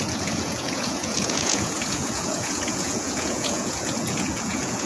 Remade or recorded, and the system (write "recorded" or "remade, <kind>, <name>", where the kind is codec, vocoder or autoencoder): remade, vocoder, Vocos